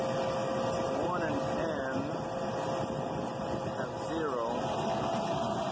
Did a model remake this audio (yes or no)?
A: no